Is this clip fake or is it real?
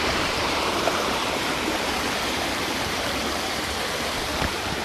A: fake